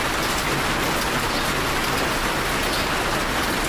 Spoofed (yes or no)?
no